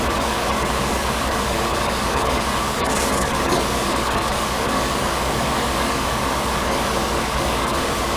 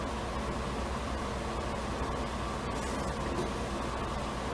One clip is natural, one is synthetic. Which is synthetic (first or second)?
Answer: first